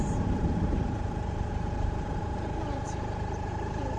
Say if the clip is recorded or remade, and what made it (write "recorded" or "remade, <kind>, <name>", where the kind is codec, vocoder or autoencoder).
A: remade, vocoder, BigVGAN v2